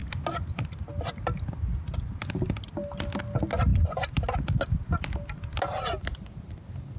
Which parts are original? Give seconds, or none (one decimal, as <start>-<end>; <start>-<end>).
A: 0.0-7.0